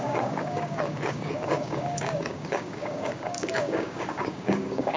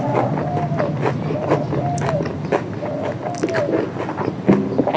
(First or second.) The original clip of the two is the second